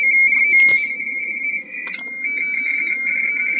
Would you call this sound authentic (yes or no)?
yes